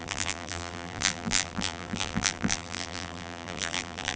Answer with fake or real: fake